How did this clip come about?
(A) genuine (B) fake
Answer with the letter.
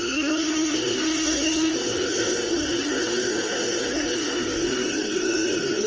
B